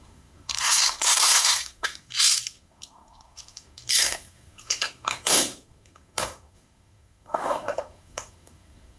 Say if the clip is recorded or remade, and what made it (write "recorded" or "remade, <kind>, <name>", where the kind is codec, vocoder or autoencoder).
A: remade, codec, SNAC